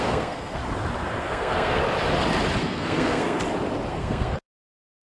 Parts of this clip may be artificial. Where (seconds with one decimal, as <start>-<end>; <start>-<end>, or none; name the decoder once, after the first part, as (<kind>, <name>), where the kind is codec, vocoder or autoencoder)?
0.0-0.6 (codec, SNAC); 1.2-1.8; 2.6-3.4; 3.9-5.1

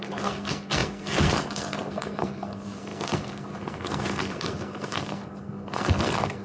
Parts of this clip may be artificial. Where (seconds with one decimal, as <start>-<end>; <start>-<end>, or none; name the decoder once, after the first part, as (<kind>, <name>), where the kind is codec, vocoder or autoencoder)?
0.0-6.4 (codec, SNAC)